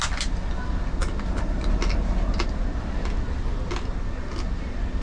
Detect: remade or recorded recorded